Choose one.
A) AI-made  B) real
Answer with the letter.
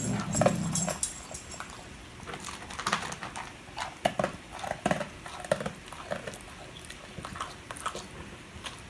B